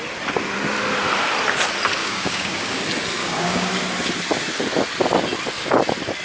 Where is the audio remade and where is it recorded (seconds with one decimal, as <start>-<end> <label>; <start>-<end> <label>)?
0.0-2.0 recorded; 2.0-2.8 remade; 2.8-3.2 recorded; 3.2-3.7 remade; 3.7-6.2 recorded

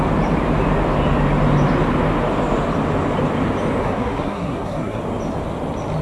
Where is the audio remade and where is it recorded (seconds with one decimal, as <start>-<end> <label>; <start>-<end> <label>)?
0.0-3.8 recorded; 3.8-5.0 remade; 5.0-6.0 recorded

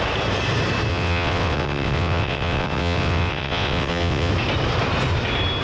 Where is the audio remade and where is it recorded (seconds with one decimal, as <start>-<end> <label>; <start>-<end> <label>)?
0.0-0.9 recorded; 0.9-4.3 remade; 4.3-5.6 recorded